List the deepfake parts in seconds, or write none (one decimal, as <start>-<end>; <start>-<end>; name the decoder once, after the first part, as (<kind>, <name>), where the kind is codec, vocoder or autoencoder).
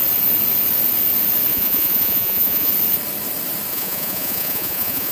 1.5-2.7 (vocoder, Vocos); 3.7-5.1